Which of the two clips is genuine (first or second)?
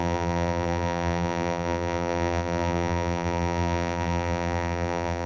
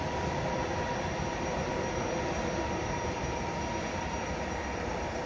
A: second